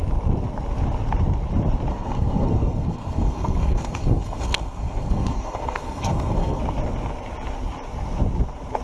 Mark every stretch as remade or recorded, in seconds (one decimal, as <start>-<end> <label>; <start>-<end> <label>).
0.0-1.9 recorded; 1.9-6.6 remade; 6.6-8.8 recorded

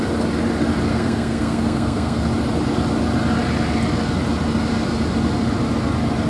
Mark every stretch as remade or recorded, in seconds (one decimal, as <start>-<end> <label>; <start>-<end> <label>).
0.0-0.9 recorded; 0.9-2.3 remade; 2.3-6.3 recorded